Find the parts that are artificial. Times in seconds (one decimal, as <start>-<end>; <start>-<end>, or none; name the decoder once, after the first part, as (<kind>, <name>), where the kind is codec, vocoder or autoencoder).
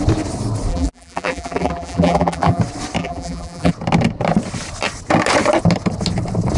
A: 0.7-2.6 (vocoder, BigVGAN v2); 3.0-3.7